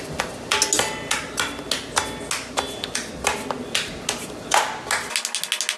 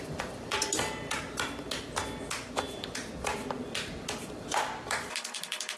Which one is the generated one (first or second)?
second